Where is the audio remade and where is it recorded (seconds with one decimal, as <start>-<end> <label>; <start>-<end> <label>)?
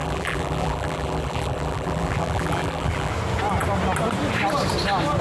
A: 0.0-3.1 remade; 3.1-5.2 recorded